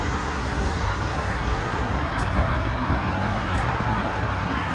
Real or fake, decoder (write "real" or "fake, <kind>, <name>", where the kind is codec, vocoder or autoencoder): fake, codec, SNAC